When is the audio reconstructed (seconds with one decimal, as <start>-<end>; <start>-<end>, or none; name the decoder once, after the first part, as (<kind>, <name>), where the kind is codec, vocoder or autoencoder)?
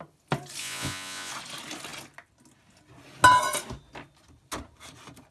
0.6-1.3 (vocoder, Vocos)